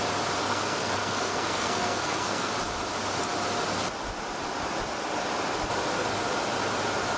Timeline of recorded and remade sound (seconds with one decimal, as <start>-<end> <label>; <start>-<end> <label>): 0.0-0.4 recorded; 0.4-2.5 remade; 2.5-7.2 recorded